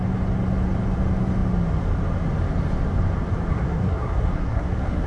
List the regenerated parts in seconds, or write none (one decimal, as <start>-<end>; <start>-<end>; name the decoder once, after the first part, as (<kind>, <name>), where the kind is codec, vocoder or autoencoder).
3.5-5.1 (codec, SNAC)